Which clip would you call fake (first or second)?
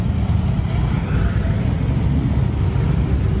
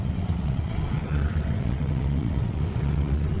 second